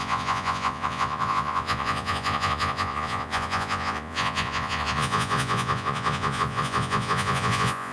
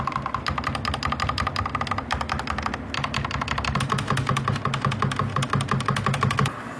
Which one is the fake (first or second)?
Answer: first